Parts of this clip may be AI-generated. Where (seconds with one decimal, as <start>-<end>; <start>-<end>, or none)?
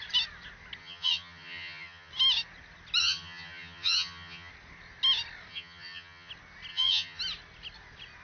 0.8-2.1; 3.0-4.5; 5.5-6.3; 6.7-7.2